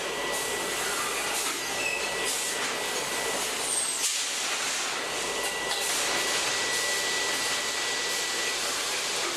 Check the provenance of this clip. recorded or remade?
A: recorded